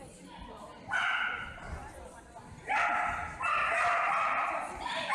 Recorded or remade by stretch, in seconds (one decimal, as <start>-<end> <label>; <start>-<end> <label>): 0.0-5.1 recorded